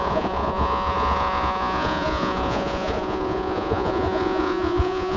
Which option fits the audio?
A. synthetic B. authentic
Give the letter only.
A